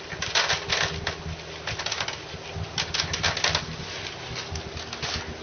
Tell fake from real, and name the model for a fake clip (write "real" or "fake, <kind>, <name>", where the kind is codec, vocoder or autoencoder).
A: real